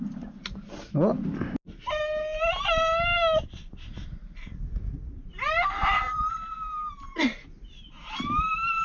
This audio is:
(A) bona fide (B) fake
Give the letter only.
A